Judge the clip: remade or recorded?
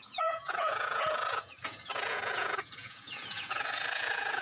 remade